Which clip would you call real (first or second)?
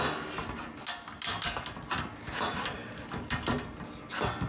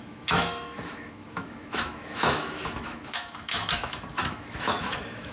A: first